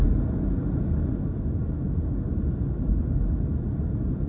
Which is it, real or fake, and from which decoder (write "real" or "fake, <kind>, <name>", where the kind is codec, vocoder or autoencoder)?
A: real